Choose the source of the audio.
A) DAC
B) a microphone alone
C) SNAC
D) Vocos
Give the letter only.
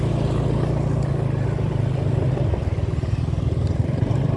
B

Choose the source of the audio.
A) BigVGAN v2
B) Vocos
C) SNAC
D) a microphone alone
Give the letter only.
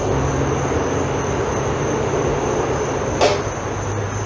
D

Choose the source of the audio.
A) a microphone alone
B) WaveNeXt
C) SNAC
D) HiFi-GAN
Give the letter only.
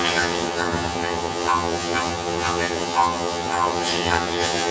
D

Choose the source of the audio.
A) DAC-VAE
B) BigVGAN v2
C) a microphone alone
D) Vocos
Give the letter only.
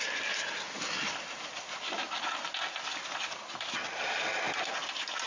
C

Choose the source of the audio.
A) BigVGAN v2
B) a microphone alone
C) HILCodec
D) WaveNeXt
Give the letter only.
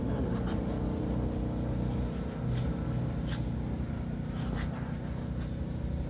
B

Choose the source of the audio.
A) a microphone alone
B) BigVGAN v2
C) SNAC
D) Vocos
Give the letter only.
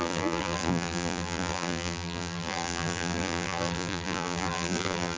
B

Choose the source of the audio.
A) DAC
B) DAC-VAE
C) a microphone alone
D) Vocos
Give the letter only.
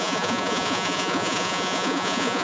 D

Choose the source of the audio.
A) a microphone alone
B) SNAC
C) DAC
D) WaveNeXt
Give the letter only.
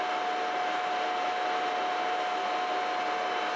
A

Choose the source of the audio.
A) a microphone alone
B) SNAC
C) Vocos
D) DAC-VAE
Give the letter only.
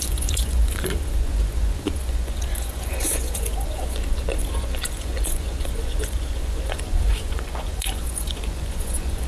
C